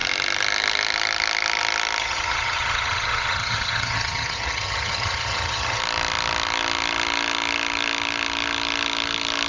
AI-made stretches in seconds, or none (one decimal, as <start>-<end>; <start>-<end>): 2.0-5.8